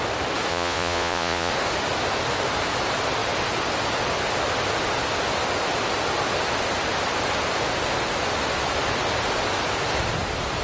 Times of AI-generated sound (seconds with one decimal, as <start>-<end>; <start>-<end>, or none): 0.5-1.5